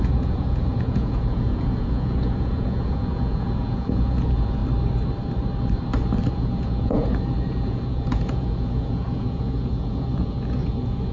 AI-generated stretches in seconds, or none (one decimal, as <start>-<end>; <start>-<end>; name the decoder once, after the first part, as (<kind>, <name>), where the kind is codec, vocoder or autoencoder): 0.0-4.6 (vocoder, Vocos); 6.3-11.1